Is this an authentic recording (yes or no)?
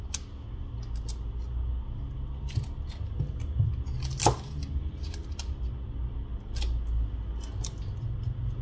yes